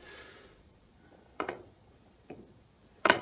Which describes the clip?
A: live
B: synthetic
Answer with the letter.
B